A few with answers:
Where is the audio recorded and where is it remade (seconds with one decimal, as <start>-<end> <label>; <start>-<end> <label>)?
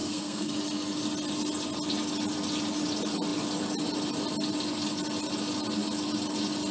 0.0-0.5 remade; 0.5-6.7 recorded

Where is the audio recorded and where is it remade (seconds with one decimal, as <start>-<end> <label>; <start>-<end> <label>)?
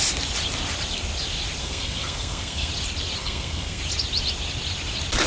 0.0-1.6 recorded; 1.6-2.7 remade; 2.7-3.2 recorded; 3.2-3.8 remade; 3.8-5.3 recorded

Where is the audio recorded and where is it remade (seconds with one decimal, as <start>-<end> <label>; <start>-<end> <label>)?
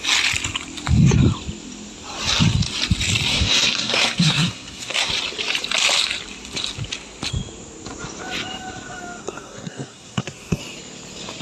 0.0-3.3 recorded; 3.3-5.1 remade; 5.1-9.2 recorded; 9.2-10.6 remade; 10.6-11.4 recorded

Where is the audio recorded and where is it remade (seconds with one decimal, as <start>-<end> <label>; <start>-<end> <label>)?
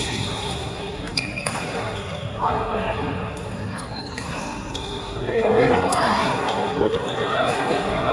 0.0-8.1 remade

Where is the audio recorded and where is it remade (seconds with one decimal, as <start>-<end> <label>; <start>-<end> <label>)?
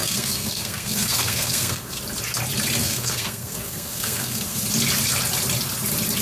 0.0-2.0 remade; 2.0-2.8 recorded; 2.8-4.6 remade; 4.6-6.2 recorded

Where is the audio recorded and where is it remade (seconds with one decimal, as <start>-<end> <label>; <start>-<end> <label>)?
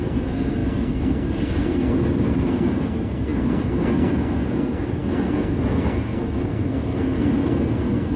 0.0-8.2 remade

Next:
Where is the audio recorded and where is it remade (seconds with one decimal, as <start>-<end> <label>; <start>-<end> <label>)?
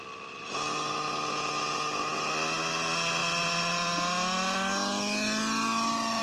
0.0-6.2 recorded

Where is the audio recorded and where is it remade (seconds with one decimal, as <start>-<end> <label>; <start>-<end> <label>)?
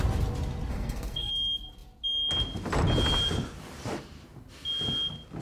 0.0-0.7 recorded; 0.7-1.3 remade; 1.3-5.4 recorded